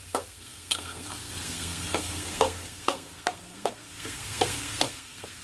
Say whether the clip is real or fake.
fake